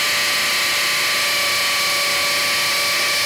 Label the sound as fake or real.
real